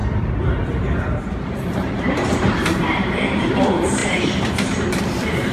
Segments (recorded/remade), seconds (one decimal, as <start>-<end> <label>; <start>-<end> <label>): 0.0-5.5 remade